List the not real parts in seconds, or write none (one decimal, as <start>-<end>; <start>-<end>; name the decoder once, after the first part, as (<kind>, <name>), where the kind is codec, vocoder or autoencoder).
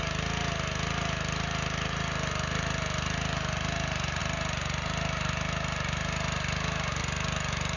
none